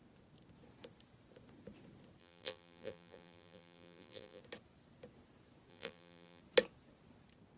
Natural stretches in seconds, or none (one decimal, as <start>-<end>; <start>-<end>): 0.0-2.2; 4.4-5.7; 6.4-7.6